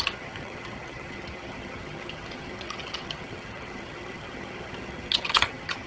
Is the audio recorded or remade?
remade